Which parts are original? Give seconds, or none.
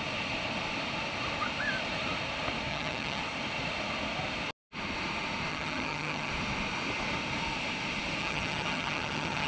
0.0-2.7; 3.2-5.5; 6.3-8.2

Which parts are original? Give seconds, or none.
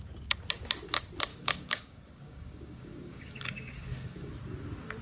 0.0-1.3; 4.3-5.0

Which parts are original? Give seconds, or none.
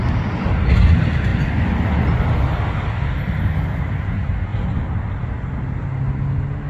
0.0-6.7